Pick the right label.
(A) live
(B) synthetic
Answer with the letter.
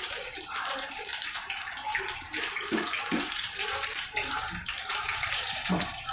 B